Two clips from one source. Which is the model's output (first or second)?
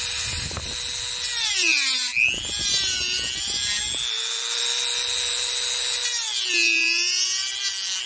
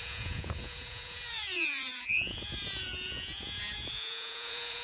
second